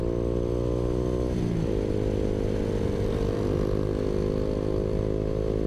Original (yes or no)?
yes